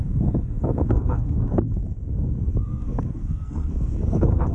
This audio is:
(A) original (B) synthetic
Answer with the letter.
B